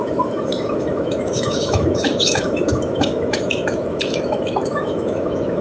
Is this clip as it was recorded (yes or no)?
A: no